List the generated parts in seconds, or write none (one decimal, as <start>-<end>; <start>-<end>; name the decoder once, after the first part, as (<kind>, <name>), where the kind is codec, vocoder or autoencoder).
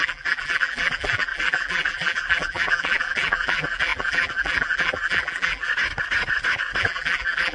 0.0-5.7 (vocoder, BigVGAN v2); 6.8-7.5